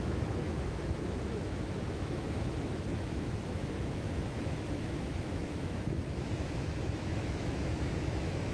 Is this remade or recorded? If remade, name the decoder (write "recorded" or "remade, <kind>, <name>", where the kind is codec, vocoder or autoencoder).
remade, autoencoder, DAC-VAE